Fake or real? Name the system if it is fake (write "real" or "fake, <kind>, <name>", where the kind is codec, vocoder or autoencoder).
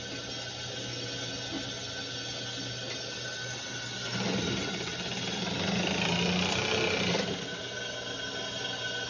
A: real